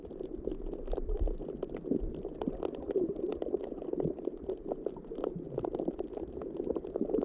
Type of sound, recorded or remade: recorded